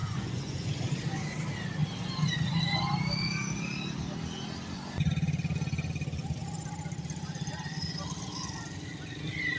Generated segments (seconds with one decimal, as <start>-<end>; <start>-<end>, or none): 0.0-0.7